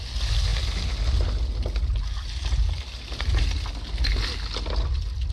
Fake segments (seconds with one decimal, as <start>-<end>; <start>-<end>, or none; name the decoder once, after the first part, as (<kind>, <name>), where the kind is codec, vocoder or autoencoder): none